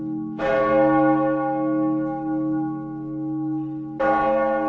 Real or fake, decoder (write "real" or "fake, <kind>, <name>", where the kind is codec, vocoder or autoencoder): real